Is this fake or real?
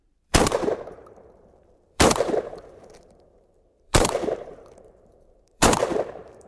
fake